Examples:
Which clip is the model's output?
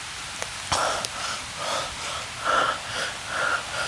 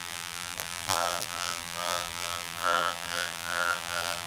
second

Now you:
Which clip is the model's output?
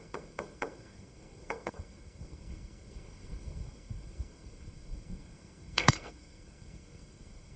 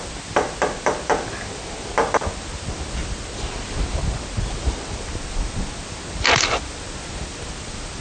first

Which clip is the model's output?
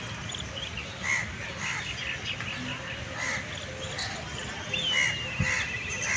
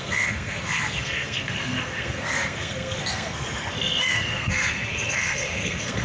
second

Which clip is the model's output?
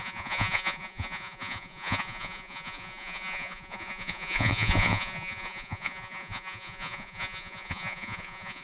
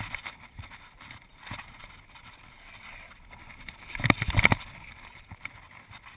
first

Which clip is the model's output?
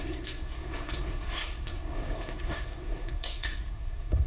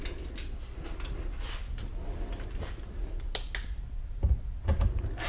first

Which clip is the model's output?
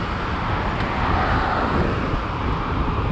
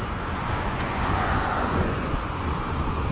second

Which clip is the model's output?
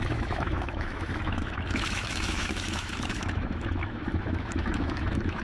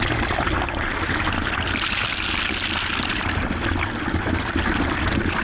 first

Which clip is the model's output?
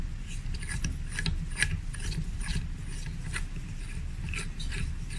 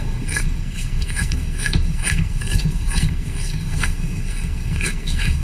second